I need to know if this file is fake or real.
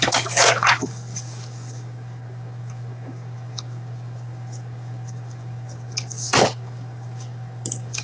fake